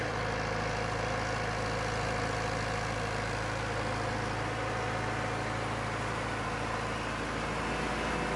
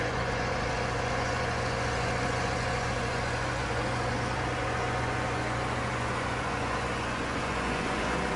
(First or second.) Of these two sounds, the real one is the first